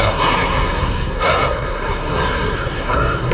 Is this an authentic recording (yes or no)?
no